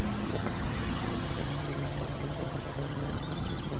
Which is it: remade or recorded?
remade